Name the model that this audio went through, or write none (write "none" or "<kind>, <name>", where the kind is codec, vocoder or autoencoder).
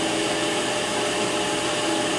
none